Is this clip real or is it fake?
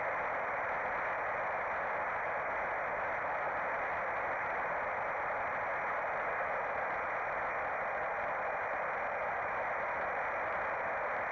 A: real